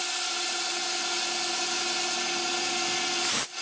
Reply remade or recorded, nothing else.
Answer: recorded